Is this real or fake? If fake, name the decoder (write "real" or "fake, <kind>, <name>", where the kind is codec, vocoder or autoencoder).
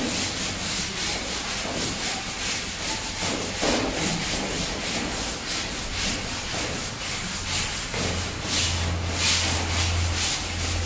real